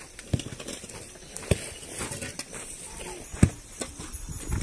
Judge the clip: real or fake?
real